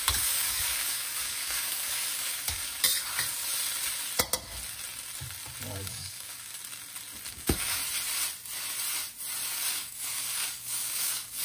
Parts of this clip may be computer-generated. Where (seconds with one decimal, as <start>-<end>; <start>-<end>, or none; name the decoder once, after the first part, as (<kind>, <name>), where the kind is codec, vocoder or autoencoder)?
0.0-2.7 (codec, DAC); 5.8-6.6; 7.3-7.8; 9.7-11.4

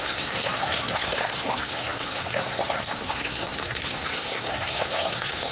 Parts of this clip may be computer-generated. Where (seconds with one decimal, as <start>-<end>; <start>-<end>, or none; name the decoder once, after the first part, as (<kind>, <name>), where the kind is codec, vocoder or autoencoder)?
0.0-5.5 (codec, SNAC)

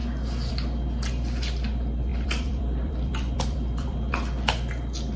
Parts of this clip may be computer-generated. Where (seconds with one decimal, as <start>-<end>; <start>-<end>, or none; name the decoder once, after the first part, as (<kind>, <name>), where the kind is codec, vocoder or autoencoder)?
2.1-4.1 (vocoder, BigVGAN v2)

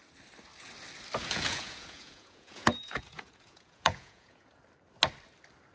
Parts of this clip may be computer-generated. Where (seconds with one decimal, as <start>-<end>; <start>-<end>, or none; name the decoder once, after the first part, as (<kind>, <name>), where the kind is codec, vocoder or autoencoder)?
1.2-4.6 (vocoder, Vocos)

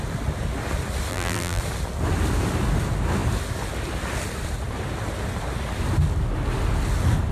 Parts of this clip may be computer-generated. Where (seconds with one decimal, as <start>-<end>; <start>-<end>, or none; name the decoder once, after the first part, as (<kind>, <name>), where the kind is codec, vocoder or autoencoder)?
1.1-1.6 (vocoder, BigVGAN v2)

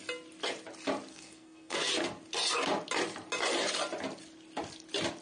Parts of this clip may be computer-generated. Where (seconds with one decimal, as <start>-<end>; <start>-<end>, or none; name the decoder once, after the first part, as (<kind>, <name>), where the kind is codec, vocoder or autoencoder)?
1.1-1.9 (codec, SNAC)